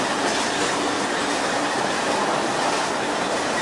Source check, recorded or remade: recorded